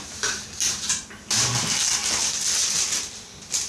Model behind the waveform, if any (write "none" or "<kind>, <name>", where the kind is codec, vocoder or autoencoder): none